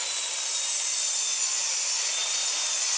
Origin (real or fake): real